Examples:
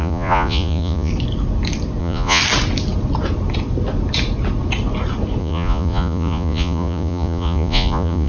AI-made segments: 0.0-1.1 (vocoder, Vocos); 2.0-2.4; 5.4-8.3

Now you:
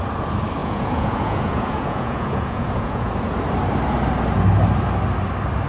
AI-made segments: 0.6-3.1 (vocoder, Vocos)

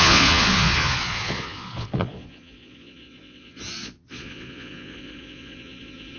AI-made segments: 0.0-6.2 (vocoder, Vocos)

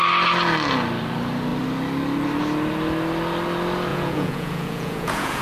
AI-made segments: 3.9-5.4 (vocoder, Vocos)

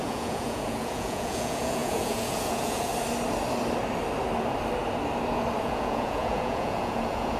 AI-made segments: 0.0-2.9 (vocoder, Vocos); 5.6-7.4

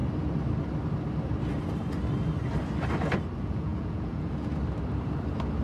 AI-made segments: 3.4-4.5 (vocoder, Vocos)

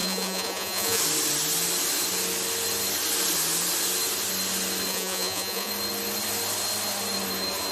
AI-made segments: 0.0-1.0 (vocoder, Vocos); 4.9-5.7

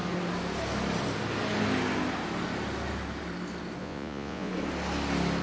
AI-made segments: 3.8-4.5 (vocoder, Vocos)